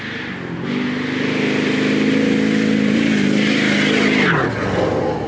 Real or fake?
real